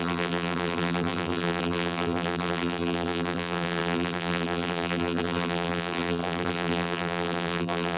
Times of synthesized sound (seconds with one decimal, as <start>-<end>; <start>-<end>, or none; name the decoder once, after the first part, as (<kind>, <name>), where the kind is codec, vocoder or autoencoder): 0.0-8.0 (vocoder, BigVGAN v2)